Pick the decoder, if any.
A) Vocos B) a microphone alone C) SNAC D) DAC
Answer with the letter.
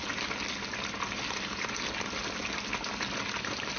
B